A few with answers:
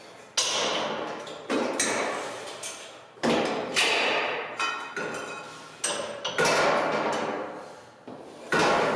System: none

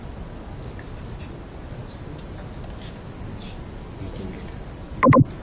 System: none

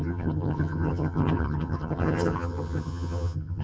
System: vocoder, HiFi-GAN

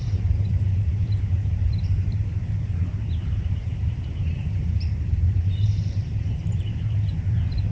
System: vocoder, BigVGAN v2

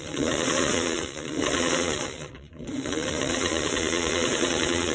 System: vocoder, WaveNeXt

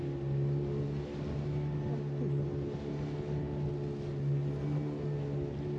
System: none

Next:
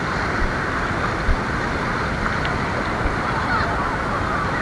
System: none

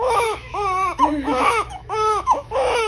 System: autoencoder, DAC-VAE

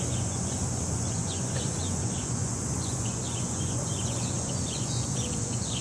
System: vocoder, Vocos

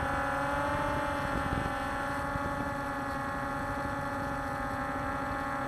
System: none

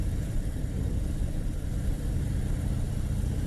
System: vocoder, BigVGAN v2